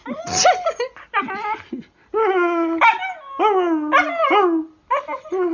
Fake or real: real